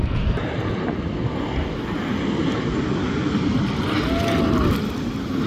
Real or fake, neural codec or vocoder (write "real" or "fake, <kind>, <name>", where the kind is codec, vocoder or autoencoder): real